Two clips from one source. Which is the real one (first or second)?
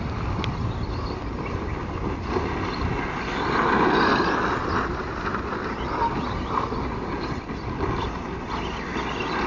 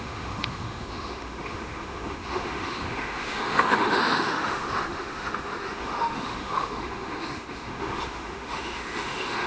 first